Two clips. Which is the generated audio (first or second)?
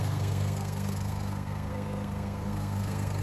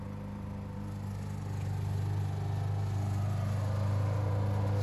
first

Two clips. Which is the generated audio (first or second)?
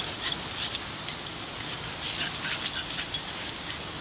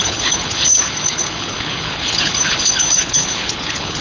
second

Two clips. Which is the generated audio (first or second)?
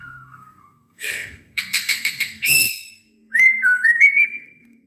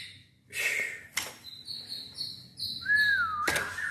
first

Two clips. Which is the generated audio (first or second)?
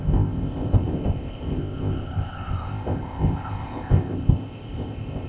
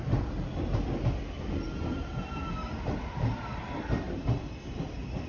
first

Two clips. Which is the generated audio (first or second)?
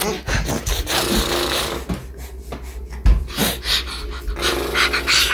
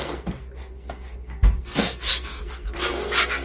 second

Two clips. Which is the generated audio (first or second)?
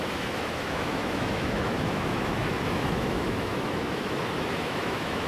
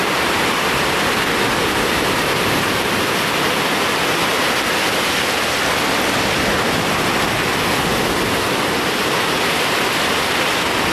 first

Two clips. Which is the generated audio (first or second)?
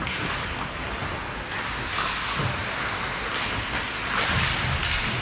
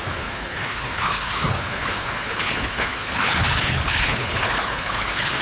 second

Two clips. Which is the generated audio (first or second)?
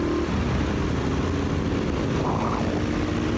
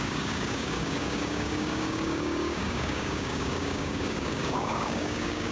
second